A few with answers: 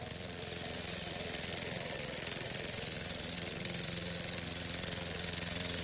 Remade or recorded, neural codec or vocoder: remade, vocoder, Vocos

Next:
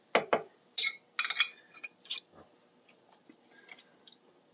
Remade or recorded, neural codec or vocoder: recorded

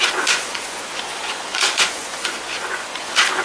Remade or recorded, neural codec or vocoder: remade, vocoder, Vocos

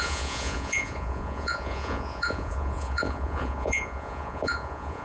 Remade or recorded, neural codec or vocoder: remade, vocoder, Vocos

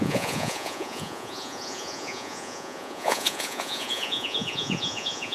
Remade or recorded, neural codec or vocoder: remade, vocoder, Vocos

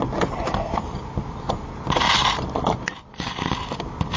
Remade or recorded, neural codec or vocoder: recorded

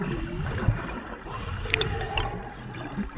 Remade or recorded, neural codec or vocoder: recorded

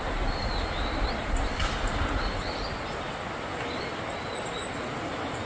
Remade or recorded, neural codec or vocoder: recorded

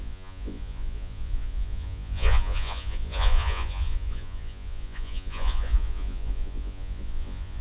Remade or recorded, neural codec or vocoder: remade, vocoder, Vocos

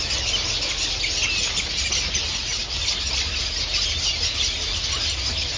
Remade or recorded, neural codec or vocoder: recorded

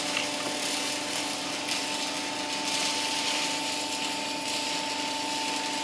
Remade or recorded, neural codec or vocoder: recorded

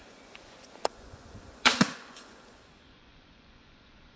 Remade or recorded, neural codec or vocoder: remade, vocoder, Vocos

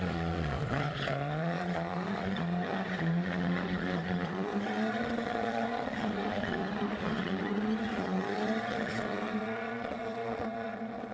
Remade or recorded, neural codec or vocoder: remade, vocoder, Vocos